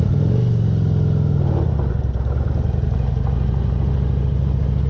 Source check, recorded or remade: recorded